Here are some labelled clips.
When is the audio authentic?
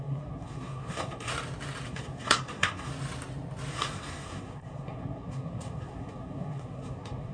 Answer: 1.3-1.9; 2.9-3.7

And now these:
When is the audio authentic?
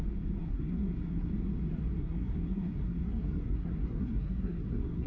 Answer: 0.0-0.4; 1.3-1.9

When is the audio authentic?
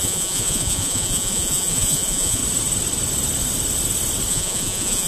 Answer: 2.4-4.3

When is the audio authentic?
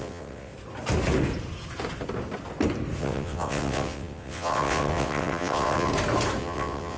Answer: 0.5-3.0; 5.9-6.4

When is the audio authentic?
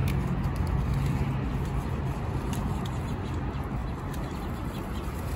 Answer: 0.0-5.4